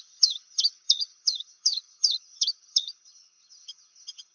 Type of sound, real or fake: fake